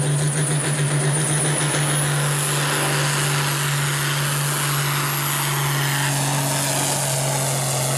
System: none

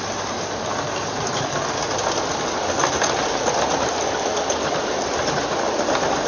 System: none